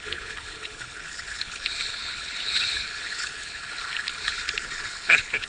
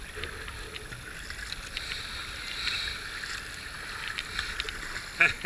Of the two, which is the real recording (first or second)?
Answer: second